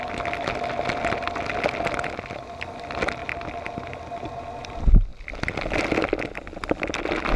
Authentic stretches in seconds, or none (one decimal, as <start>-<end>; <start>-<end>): 0.0-7.4